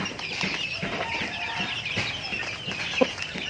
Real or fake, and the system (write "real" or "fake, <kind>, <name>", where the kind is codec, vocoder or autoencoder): fake, vocoder, BigVGAN v2